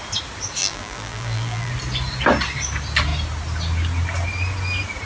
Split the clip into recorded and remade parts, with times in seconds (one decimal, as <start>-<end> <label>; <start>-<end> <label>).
0.0-0.6 recorded; 0.6-1.7 remade; 1.7-5.1 recorded